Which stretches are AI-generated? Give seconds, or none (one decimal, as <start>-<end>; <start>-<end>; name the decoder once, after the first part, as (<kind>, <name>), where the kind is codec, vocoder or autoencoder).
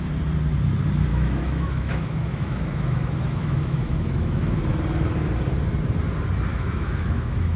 1.1-4.6 (autoencoder, DAC-VAE); 6.5-7.6